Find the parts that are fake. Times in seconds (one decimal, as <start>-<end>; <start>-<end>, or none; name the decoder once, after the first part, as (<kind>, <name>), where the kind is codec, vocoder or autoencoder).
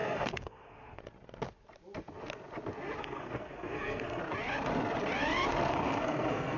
0.0-1.0 (codec, SNAC); 3.0-4.2; 5.7-6.6